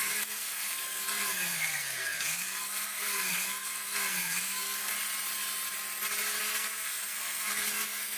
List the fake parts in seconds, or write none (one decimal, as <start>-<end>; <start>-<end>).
0.0-4.9; 6.4-8.2